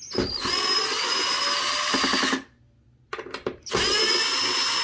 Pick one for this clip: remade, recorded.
recorded